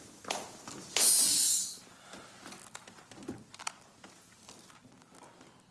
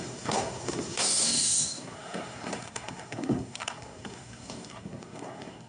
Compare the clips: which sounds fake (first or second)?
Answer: second